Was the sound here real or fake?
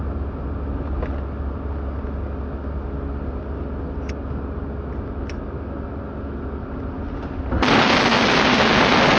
real